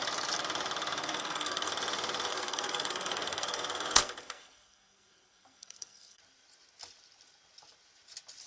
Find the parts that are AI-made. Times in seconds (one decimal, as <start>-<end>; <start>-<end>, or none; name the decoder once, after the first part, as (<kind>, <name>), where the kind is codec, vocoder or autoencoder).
1.0-1.7 (codec, SNAC); 2.3-6.2